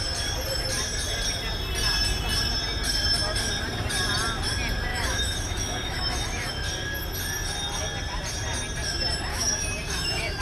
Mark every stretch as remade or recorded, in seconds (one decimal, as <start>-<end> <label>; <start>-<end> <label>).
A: 0.0-4.9 recorded; 4.9-6.5 remade; 6.5-9.3 recorded; 9.3-10.4 remade